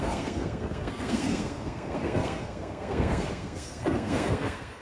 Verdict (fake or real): fake